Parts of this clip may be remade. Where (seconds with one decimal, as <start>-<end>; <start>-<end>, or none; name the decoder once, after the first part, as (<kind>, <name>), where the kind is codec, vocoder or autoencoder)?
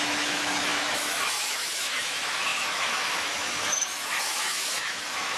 0.0-5.4 (autoencoder, DAC-VAE)